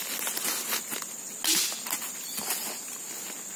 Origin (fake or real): real